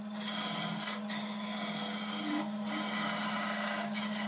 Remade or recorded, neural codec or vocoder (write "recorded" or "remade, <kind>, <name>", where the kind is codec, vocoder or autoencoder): recorded